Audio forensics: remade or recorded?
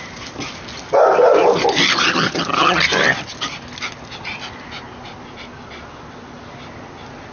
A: recorded